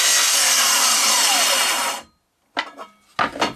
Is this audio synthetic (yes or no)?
no